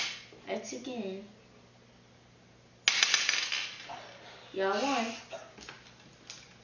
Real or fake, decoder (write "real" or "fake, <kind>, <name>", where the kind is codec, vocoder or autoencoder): real